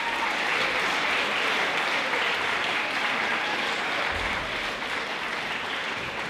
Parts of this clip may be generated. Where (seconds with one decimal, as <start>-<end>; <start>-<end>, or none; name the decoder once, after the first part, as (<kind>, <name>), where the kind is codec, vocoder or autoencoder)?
none